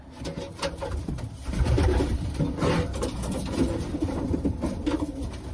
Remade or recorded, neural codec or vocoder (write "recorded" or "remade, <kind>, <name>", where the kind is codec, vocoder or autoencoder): recorded